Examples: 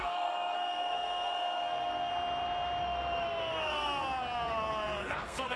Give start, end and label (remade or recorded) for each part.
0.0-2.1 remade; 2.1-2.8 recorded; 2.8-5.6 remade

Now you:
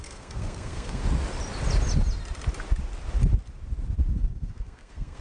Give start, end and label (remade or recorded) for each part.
0.0-1.0 remade; 1.0-4.1 recorded; 4.1-5.2 remade

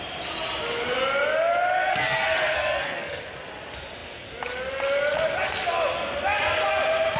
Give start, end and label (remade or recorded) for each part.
0.0-1.9 recorded; 1.9-3.2 remade; 3.2-7.2 recorded

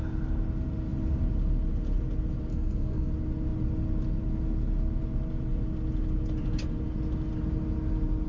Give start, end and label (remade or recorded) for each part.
0.0-2.5 recorded; 2.5-3.1 remade; 3.1-8.3 recorded

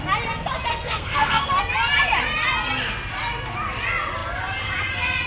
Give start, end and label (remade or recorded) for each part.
0.0-0.7 recorded; 0.7-1.6 remade; 1.6-5.3 recorded

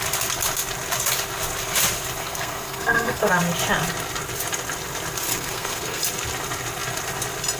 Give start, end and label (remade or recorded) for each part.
0.0-2.2 recorded; 2.2-3.3 remade; 3.3-5.3 recorded; 5.3-6.0 remade; 6.0-7.6 recorded

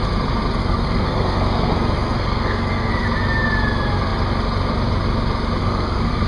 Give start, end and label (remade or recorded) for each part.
0.0-0.6 recorded; 0.6-2.9 remade; 2.9-5.6 recorded; 5.6-6.3 remade

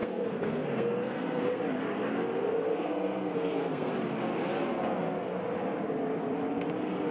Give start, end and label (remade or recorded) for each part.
0.0-1.6 remade; 1.6-2.7 recorded; 2.7-3.9 remade; 3.9-7.1 recorded